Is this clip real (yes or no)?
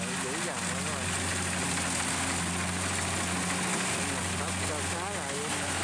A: yes